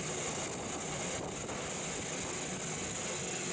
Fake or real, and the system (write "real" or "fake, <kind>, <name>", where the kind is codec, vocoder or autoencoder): real